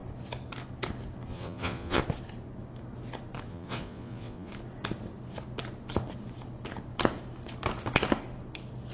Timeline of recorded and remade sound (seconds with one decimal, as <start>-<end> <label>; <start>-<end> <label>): 0.0-1.3 recorded; 1.3-2.0 remade; 2.0-3.5 recorded; 3.5-4.5 remade; 4.5-8.9 recorded